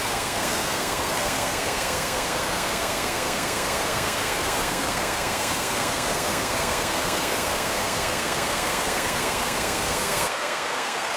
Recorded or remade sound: remade